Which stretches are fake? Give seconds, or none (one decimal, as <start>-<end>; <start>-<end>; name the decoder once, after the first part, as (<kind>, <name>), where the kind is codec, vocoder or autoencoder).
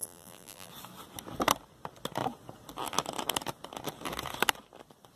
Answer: 0.0-0.7 (vocoder, BigVGAN v2)